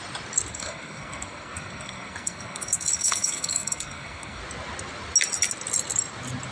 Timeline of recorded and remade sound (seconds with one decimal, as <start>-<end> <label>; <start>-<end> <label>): 0.0-0.5 recorded; 0.5-4.4 remade; 4.4-6.5 recorded